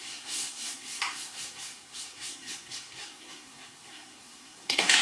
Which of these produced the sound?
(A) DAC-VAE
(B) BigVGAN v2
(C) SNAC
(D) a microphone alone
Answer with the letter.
C